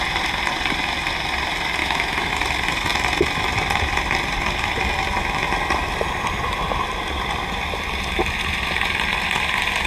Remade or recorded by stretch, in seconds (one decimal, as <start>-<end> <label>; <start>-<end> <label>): 0.0-1.8 recorded; 1.8-2.3 remade; 2.3-9.9 recorded